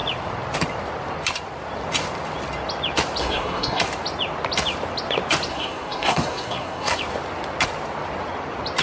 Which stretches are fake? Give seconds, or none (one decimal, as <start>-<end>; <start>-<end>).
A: 3.2-3.8; 5.5-7.0